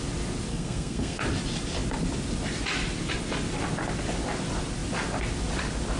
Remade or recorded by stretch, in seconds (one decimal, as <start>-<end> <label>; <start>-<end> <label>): 0.0-0.5 recorded; 0.5-1.2 remade; 1.2-6.0 recorded